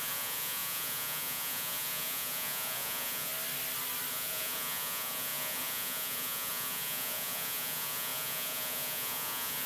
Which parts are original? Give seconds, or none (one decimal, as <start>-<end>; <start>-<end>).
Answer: 3.3-4.1